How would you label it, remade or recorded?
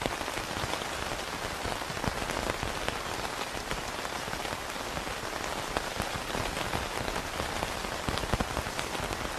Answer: recorded